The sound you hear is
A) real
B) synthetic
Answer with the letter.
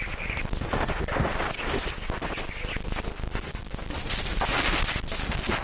A